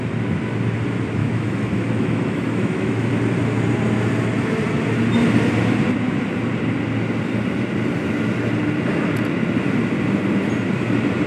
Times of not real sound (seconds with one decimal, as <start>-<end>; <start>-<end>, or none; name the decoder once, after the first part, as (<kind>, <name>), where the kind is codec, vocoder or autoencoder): 1.2-3.1 (autoencoder, DAC-VAE)